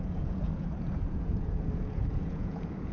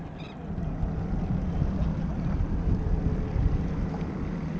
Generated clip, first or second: first